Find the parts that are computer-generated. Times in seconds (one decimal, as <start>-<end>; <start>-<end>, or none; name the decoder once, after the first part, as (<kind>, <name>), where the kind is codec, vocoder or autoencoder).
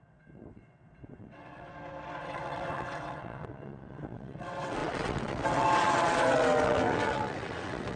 0.0-1.7 (vocoder, WaveNeXt); 2.2-8.0